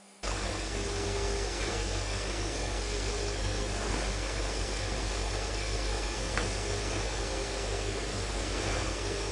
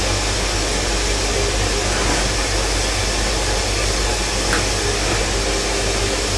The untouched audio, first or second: second